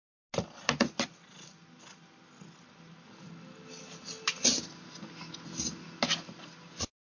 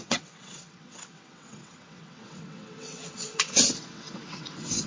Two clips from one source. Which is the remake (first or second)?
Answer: second